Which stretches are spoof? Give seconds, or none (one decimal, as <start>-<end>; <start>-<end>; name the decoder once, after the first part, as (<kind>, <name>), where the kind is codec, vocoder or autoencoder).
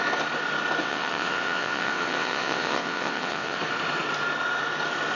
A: 0.8-3.6 (vocoder, WaveNeXt)